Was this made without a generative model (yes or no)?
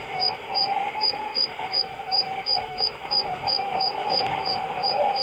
no